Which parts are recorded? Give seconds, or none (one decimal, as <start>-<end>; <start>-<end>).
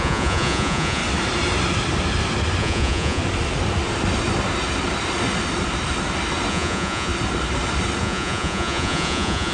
1.0-2.6; 3.2-6.5; 7.1-8.0